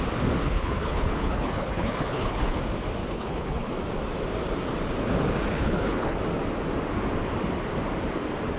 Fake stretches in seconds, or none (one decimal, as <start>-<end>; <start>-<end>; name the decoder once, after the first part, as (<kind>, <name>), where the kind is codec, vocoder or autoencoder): 0.4-2.6 (codec, HILCodec); 3.0-3.7; 5.5-6.2